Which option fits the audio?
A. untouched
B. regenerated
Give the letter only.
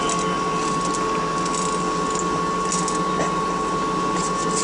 A